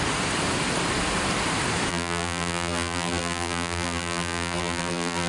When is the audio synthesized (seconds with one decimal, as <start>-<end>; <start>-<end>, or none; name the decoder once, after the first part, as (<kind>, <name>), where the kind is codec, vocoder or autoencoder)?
1.9-5.3 (vocoder, BigVGAN v2)

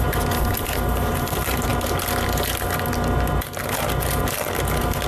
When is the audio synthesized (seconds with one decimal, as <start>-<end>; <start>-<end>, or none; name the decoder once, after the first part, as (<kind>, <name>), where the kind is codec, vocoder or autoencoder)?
0.0-1.7 (vocoder, BigVGAN v2)

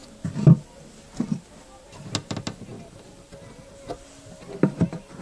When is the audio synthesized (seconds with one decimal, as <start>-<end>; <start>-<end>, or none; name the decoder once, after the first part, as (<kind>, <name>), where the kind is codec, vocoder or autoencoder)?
2.7-5.2 (vocoder, BigVGAN v2)

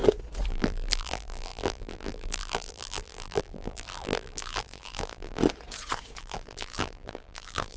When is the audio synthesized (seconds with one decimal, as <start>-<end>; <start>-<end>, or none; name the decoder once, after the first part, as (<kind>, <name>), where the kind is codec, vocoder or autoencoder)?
0.5-5.4 (vocoder, BigVGAN v2); 6.2-7.8